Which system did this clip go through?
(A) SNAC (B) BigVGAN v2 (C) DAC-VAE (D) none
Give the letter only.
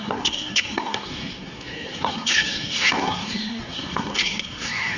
A